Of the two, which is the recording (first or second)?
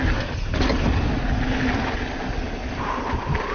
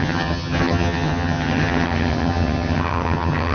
first